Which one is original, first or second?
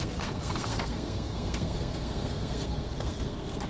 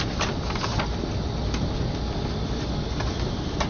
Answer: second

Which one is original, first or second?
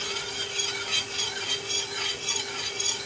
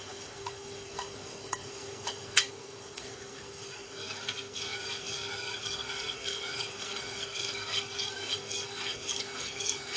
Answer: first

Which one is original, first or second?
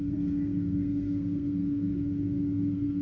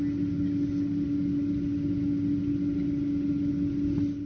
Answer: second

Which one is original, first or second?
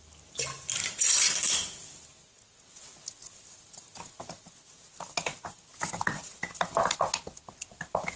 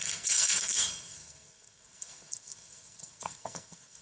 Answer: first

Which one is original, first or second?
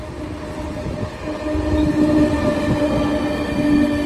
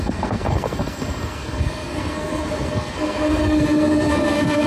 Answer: first